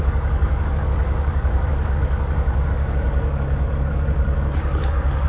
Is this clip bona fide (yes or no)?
no